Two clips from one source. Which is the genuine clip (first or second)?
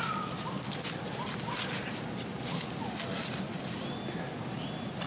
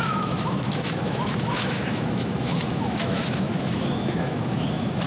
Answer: first